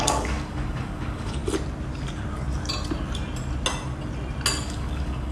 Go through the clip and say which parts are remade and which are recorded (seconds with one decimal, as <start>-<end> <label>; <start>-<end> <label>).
0.0-1.4 remade; 1.4-4.6 recorded; 4.6-5.3 remade